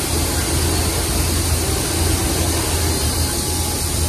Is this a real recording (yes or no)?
yes